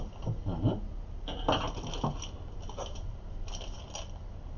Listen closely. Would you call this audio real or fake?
real